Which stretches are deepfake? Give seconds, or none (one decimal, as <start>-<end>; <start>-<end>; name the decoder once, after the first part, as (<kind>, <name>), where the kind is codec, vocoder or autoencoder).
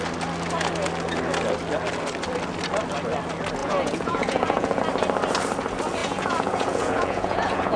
3.6-4.8 (vocoder, Vocos); 6.0-7.8